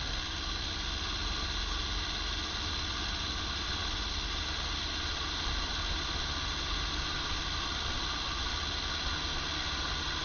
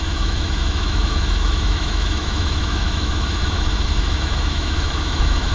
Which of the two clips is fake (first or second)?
second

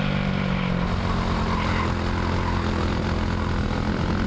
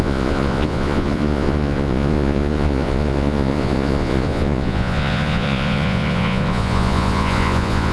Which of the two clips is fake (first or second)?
second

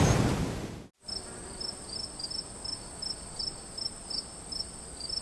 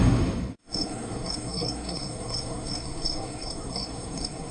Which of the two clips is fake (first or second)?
second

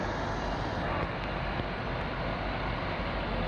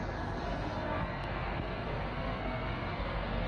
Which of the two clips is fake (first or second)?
second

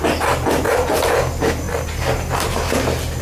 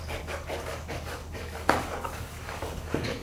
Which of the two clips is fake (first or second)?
second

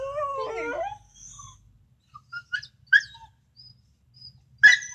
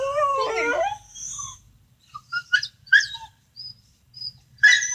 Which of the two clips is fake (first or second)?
second